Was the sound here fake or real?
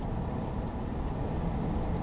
real